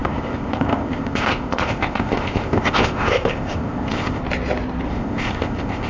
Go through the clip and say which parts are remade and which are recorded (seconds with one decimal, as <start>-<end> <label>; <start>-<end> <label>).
0.0-4.2 remade; 4.2-4.9 recorded; 4.9-5.9 remade